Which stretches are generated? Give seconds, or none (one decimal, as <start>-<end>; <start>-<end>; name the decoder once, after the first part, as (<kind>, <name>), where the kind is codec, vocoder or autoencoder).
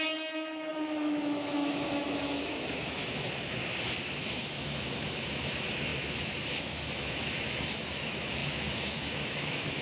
0.0-3.6 (autoencoder, DAC-VAE); 4.2-9.8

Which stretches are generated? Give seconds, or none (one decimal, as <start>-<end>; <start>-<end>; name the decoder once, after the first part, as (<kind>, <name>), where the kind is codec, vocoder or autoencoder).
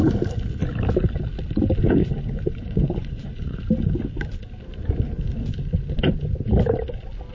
2.0-3.6 (vocoder, Vocos)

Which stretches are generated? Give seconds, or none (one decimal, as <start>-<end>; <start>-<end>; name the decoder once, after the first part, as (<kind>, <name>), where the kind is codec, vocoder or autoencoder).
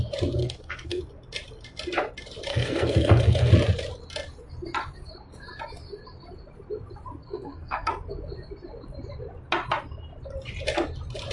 0.4-1.0 (codec, SNAC); 2.5-3.5; 7.2-7.9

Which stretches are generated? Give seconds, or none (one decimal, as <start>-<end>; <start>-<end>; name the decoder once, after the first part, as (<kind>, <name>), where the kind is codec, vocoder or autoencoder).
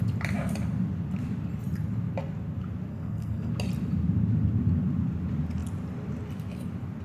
2.9-3.5 (codec, SNAC)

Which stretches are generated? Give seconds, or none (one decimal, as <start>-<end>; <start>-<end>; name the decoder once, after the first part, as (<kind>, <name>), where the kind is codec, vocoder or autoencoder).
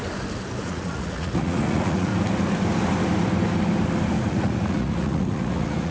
0.6-2.1 (vocoder, Vocos); 4.3-5.9